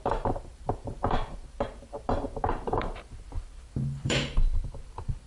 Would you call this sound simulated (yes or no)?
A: yes